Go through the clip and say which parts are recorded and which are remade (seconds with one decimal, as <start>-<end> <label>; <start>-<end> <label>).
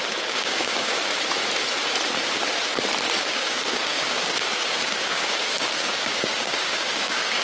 0.0-1.1 remade; 1.1-3.2 recorded; 3.2-7.4 remade